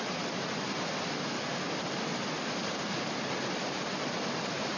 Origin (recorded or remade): recorded